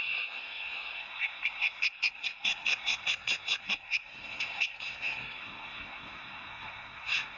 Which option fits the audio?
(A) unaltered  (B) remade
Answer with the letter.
B